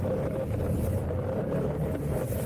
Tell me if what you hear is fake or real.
fake